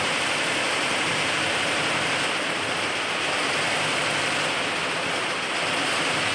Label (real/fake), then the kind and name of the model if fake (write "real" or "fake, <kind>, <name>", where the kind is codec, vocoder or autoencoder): real